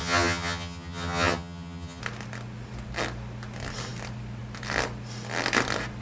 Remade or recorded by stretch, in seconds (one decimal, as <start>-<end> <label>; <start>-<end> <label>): 0.0-2.0 remade; 2.0-6.0 recorded